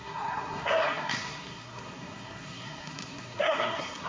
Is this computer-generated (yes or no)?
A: yes